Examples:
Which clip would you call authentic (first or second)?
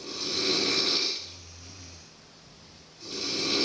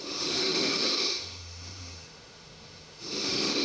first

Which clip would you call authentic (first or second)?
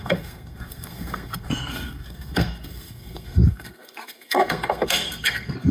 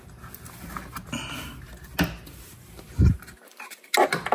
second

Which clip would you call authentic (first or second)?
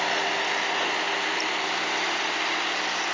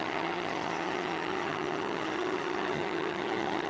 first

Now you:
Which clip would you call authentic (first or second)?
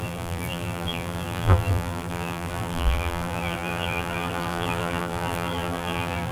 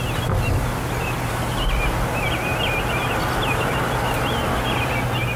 second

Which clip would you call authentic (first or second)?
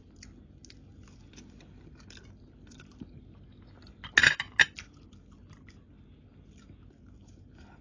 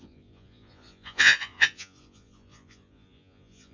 first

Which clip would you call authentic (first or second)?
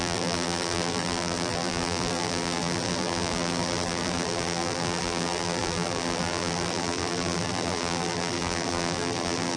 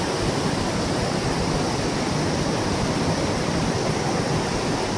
second